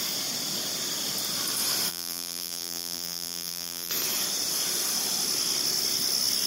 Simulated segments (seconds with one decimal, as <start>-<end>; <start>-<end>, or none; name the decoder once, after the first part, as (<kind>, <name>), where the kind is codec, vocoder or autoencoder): 1.9-3.9 (vocoder, BigVGAN v2)